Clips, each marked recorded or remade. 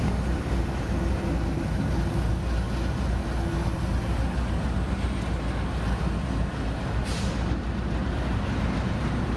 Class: recorded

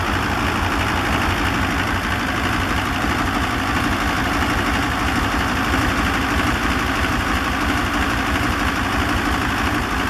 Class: recorded